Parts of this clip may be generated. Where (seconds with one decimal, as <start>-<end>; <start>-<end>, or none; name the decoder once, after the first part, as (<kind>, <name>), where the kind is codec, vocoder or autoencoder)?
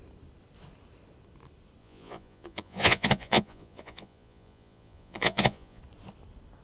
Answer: 1.8-5.8 (vocoder, Vocos)